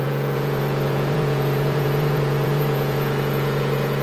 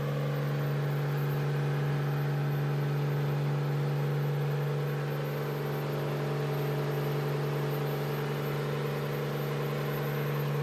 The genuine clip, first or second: second